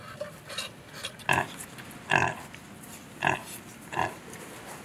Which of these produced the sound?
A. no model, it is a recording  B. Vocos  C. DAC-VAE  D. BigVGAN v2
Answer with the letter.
A